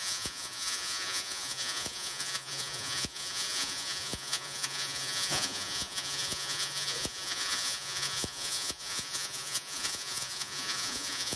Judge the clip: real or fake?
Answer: fake